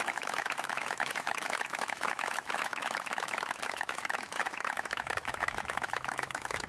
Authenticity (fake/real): fake